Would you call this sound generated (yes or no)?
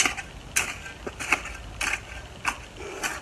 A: no